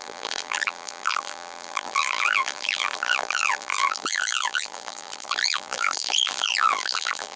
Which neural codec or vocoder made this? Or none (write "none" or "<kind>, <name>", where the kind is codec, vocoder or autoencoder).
vocoder, BigVGAN v2